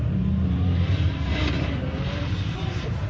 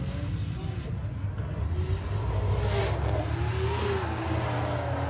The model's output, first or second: first